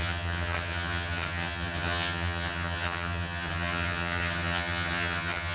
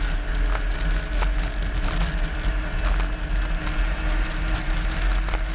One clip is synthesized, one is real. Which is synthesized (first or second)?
first